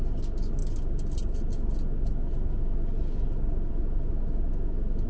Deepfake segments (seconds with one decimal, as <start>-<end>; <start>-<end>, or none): none